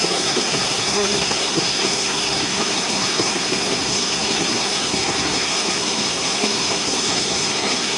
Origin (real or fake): fake